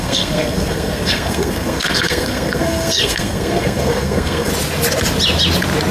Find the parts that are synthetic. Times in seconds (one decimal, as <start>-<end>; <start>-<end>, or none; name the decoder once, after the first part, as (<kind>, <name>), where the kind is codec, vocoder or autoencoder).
0.0-4.5 (codec, SNAC)